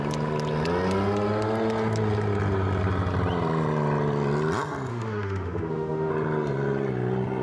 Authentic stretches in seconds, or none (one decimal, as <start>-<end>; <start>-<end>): 0.0-4.9; 6.1-7.4